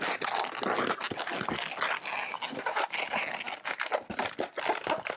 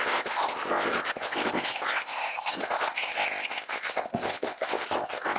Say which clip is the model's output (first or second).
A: second